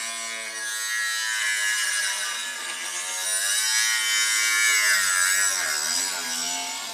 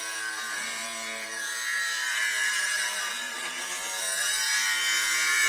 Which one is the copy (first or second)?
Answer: second